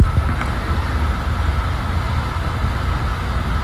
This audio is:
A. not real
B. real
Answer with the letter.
B